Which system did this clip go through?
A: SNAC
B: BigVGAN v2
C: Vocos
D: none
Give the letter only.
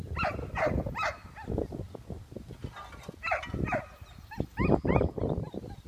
D